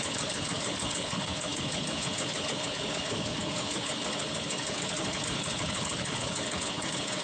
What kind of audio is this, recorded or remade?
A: remade